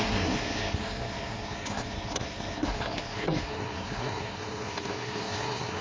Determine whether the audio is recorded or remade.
remade